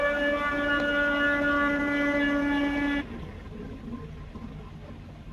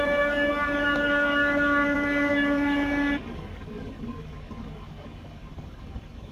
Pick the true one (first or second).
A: first